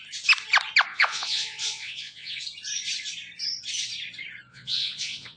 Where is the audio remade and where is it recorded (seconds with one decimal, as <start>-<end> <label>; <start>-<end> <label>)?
0.0-0.9 recorded; 0.9-2.4 remade; 2.4-4.5 recorded; 4.5-5.4 remade